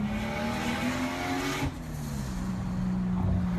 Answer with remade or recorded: recorded